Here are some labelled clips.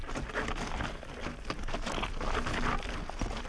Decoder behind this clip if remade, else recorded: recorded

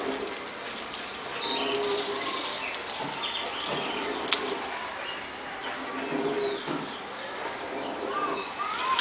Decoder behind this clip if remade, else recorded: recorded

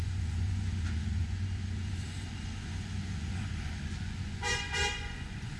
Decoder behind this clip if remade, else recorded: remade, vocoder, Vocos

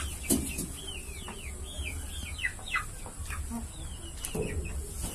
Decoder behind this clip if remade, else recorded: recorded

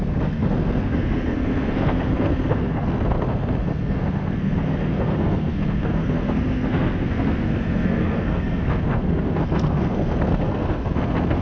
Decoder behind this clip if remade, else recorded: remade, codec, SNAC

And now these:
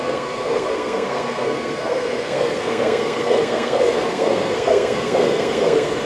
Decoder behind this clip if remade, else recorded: remade, codec, SNAC